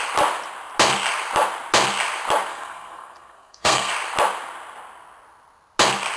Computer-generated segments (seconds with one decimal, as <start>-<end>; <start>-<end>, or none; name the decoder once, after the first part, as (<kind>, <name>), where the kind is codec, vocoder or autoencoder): 2.5-3.9 (codec, SNAC)